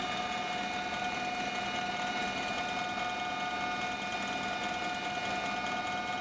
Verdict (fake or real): real